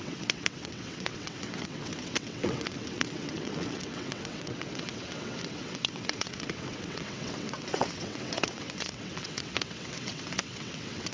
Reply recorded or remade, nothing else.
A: remade